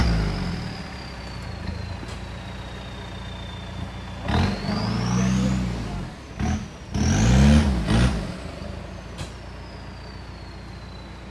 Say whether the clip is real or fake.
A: real